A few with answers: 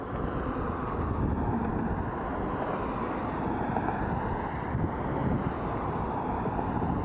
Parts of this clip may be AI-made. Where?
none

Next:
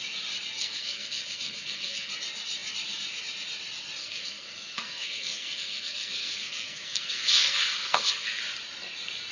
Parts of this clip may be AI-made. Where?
0.6-2.1 (codec, SNAC); 4.0-8.4

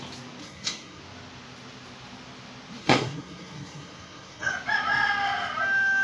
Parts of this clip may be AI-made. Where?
0.4-1.0 (codec, SNAC); 2.8-4.5

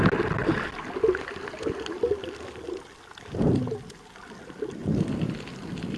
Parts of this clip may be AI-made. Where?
none

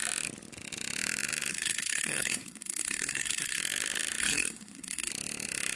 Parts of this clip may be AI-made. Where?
1.5-3.6 (codec, SNAC); 4.2-5.1

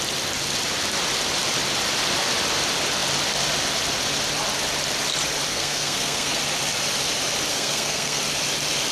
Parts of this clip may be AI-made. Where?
5.5-6.4 (codec, SNAC); 7.5-8.2

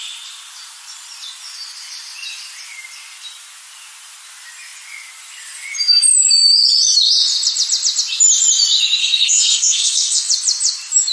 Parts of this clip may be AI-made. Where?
9.0-10.3 (codec, SNAC)